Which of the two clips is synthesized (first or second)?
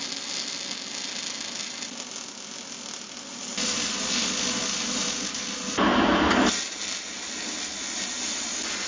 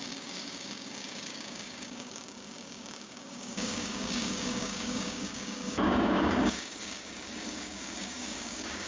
second